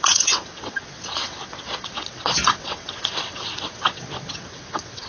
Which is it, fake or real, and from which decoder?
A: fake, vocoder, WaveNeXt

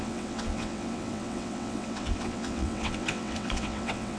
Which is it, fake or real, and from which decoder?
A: fake, vocoder, WaveNeXt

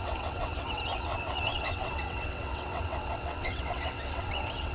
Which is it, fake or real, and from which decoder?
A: fake, vocoder, WaveNeXt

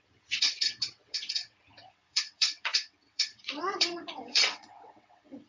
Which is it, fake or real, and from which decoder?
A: fake, vocoder, WaveNeXt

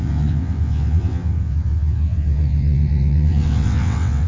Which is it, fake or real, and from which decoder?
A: fake, vocoder, WaveNeXt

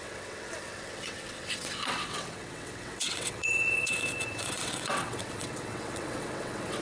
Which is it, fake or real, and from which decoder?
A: fake, vocoder, WaveNeXt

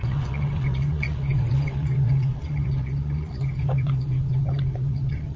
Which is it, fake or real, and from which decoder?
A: fake, vocoder, WaveNeXt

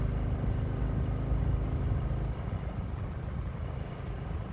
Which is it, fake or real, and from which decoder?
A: real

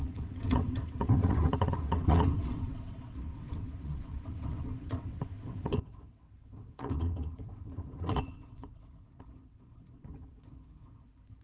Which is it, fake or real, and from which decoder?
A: fake, vocoder, WaveNeXt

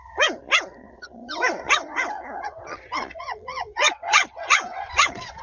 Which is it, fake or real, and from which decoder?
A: fake, vocoder, WaveNeXt